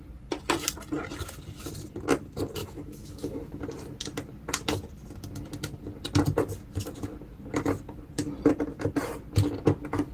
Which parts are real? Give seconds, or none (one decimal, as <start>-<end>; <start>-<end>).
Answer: 0.0-2.6; 3.6-10.1